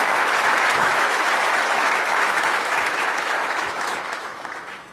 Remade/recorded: remade